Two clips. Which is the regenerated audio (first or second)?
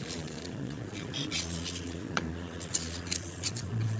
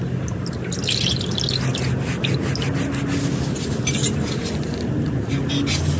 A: first